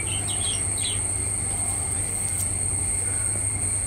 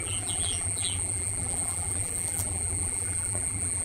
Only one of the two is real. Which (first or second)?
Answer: first